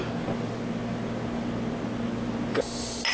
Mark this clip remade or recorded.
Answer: recorded